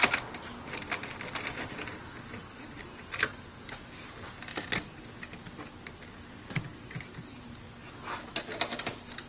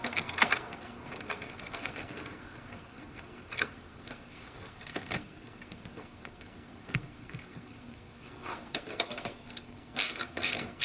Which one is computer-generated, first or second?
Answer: second